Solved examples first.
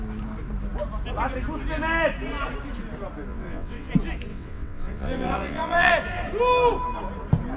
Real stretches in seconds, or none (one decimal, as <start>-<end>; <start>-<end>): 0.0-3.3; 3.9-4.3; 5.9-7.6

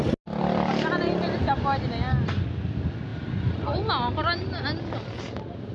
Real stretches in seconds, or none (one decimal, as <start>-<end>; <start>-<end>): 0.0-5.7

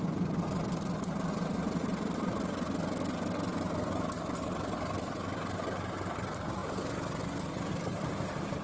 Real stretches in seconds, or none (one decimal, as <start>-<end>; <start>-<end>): 0.0-8.6